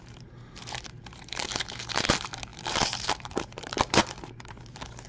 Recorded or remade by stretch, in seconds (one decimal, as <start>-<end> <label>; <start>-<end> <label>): 0.0-5.1 remade